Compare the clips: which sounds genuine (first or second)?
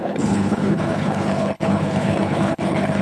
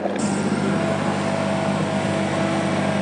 second